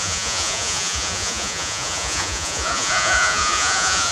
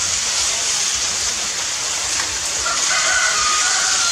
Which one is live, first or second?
second